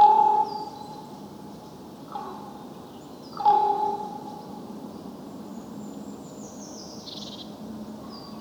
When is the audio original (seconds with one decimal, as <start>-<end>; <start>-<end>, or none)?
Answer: 0.0-8.4